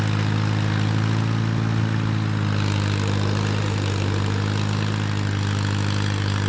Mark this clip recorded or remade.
recorded